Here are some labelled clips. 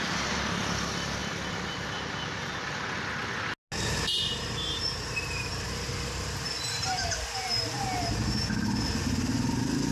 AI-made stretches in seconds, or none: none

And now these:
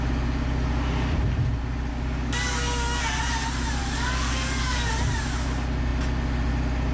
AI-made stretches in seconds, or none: 1.9-3.0 (codec, DAC); 3.8-4.9

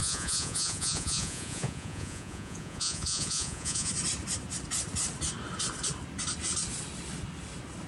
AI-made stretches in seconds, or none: 0.0-3.9 (vocoder, Vocos)